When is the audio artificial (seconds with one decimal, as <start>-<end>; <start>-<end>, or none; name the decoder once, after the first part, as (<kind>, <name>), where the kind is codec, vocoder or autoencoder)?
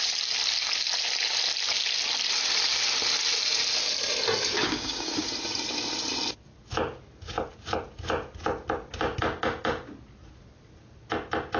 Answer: 4.5-5.3 (codec, DAC)